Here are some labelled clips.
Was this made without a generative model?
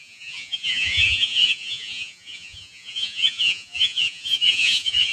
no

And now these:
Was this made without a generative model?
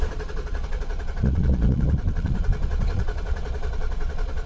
no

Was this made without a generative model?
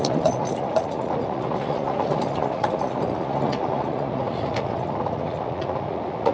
no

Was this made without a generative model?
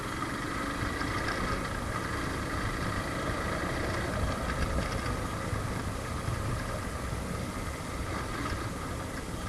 yes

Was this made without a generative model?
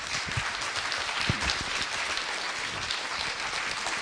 yes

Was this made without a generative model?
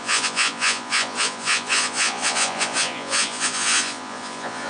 no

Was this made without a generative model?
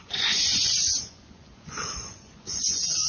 no